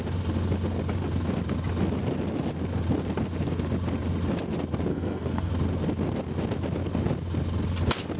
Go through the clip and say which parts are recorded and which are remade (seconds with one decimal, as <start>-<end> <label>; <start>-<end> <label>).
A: 0.0-4.9 recorded; 4.9-5.5 remade; 5.5-8.2 recorded